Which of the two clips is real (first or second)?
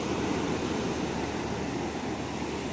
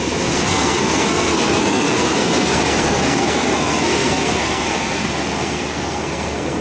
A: first